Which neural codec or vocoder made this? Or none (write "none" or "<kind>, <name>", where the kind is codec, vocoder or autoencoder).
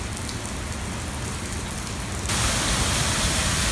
none